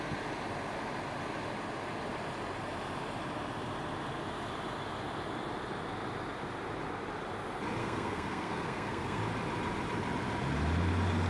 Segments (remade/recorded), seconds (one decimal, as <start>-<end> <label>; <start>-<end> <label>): 0.0-7.8 recorded; 7.8-9.2 remade; 9.2-11.3 recorded